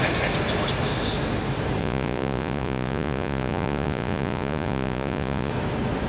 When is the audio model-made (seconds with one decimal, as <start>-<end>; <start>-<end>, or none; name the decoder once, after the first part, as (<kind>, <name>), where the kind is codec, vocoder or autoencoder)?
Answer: 1.8-5.5 (vocoder, Vocos)